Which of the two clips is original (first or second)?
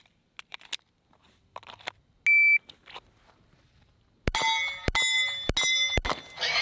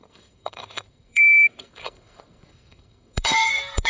first